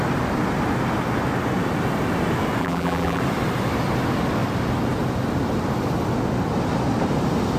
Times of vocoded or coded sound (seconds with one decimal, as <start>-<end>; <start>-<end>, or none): 2.6-3.2